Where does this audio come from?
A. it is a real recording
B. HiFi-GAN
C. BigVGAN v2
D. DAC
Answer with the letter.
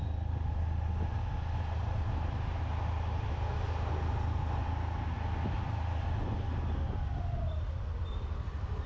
A